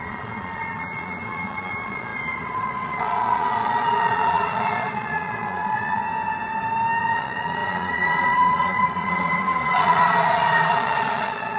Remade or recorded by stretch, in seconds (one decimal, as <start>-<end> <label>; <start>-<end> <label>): 0.0-6.0 remade; 6.0-7.0 recorded; 7.0-11.6 remade